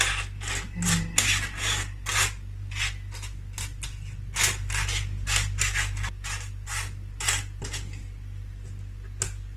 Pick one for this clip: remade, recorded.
recorded